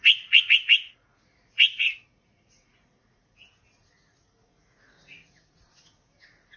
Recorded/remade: remade